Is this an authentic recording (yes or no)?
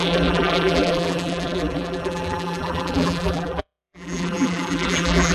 no